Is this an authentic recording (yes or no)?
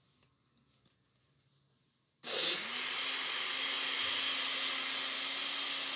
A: yes